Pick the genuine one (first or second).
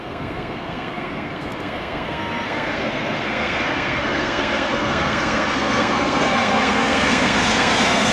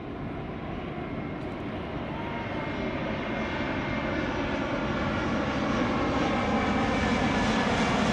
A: second